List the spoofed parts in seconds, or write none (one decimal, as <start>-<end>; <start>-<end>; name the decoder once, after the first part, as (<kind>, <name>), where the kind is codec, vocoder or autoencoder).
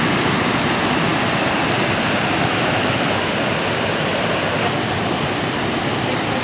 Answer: none